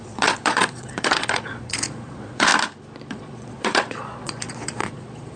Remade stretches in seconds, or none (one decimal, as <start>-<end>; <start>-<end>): 0.0-2.5; 3.1-5.4